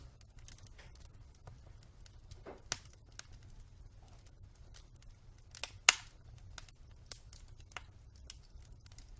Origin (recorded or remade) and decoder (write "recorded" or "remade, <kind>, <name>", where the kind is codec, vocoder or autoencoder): recorded